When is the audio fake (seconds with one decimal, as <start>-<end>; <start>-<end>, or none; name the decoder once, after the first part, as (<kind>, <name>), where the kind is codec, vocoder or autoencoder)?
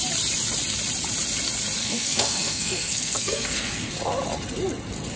1.8-3.9 (codec, SNAC)